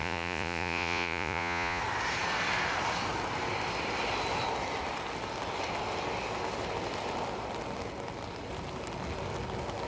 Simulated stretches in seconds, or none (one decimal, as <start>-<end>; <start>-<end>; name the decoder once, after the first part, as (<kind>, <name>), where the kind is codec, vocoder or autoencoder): 0.0-1.8 (vocoder, Vocos)